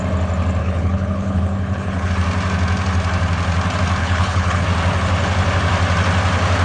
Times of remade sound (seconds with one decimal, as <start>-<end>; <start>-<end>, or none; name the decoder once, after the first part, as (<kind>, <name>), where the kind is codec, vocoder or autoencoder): 0.6-2.1 (codec, HILCodec); 4.0-4.6